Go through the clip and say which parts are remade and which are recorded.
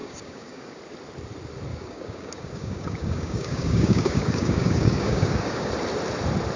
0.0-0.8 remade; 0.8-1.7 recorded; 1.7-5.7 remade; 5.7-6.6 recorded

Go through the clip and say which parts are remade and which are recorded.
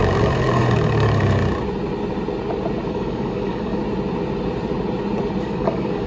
0.0-1.4 remade; 1.4-2.9 recorded; 2.9-3.8 remade; 3.8-5.4 recorded; 5.4-6.1 remade